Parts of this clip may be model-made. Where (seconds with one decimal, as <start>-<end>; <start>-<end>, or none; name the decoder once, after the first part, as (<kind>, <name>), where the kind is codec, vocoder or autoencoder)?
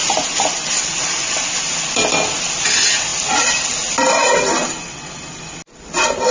none